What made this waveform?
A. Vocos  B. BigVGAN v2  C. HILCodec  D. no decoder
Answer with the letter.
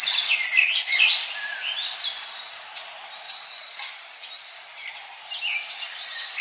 D